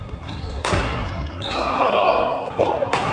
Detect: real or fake fake